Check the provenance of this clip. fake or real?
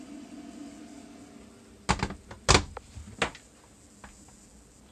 real